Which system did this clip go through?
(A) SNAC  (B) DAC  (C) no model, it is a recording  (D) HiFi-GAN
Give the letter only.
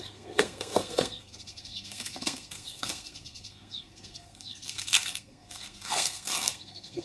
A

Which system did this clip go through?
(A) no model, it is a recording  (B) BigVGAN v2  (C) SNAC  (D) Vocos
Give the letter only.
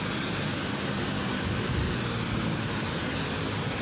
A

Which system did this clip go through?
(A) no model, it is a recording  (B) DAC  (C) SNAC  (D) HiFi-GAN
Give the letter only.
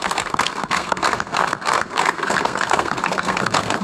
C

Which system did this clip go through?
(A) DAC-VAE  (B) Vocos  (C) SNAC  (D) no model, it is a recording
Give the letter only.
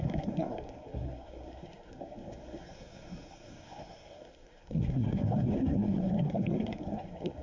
C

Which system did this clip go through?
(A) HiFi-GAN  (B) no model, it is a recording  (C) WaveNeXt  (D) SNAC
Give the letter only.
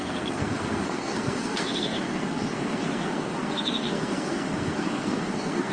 D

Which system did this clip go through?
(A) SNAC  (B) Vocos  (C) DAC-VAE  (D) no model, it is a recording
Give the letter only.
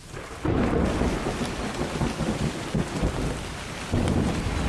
D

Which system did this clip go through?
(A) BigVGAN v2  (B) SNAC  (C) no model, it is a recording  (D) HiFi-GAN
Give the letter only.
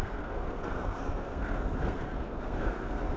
B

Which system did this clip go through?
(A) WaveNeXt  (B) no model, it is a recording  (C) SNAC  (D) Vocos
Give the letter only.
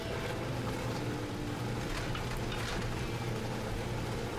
B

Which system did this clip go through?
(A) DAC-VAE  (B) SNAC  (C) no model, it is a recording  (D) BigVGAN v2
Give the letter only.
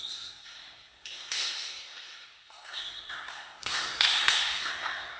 B